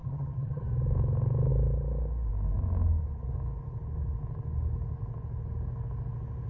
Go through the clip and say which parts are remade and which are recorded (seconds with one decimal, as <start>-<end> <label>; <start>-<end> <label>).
0.0-0.6 remade; 0.6-6.5 recorded

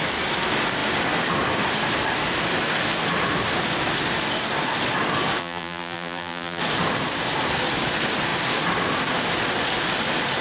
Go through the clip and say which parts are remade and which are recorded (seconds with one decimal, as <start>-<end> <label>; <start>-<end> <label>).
0.0-5.4 recorded; 5.4-6.6 remade; 6.6-10.4 recorded

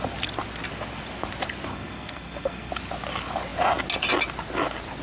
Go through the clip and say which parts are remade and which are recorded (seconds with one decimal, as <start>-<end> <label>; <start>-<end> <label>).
0.0-1.7 recorded; 1.7-2.7 remade; 2.7-5.0 recorded

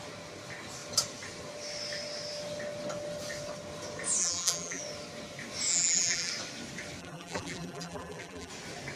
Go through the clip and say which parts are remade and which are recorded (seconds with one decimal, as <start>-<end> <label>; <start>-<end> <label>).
0.0-4.2 recorded; 4.2-4.8 remade; 4.8-5.7 recorded; 5.7-6.3 remade; 6.3-7.0 recorded; 7.0-8.5 remade; 8.5-9.0 recorded

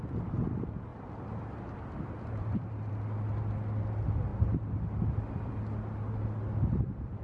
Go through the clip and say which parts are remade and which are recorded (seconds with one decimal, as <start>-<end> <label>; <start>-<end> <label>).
0.0-0.9 recorded; 0.9-2.9 remade; 2.9-7.2 recorded

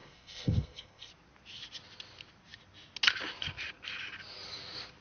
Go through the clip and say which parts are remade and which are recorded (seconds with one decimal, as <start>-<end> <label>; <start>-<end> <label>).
0.0-1.1 remade; 1.1-5.0 recorded